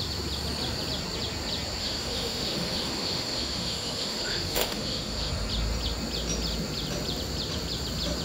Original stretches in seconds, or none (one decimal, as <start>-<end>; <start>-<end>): 0.0-1.8; 5.3-8.2